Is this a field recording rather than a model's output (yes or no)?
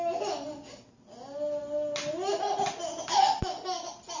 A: yes